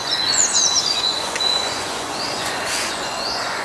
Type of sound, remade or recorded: remade